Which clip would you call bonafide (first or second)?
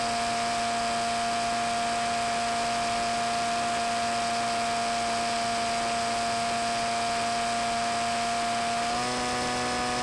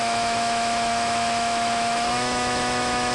first